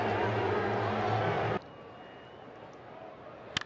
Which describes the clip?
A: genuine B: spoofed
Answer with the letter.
A